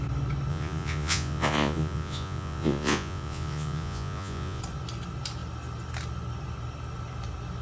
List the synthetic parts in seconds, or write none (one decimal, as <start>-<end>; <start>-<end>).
0.5-4.6